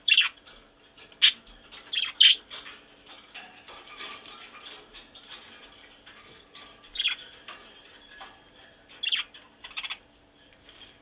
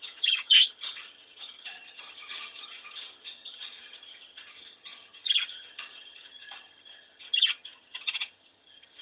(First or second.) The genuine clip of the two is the first